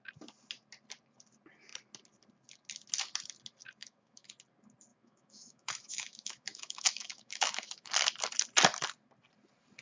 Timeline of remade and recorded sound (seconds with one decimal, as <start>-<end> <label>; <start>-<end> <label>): 0.0-3.8 recorded; 3.8-4.3 remade; 4.3-4.9 recorded; 4.9-7.9 remade; 7.9-9.8 recorded